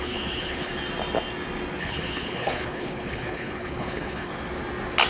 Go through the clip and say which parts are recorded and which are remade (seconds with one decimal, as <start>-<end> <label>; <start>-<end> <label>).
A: 0.0-0.7 remade; 0.7-1.8 recorded; 1.8-4.3 remade; 4.3-5.1 recorded